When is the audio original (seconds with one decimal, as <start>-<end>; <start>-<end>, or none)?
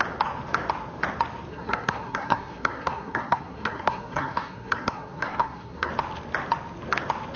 0.0-1.5; 5.9-7.4